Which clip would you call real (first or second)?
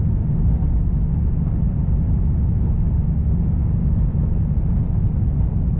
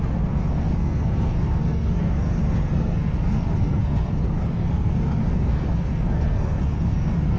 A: first